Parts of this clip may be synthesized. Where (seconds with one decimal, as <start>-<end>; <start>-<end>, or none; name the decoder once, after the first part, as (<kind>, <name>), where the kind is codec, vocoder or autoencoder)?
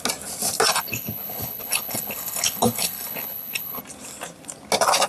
0.7-3.8 (codec, HILCodec)